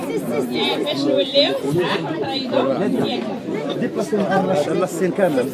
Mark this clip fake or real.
real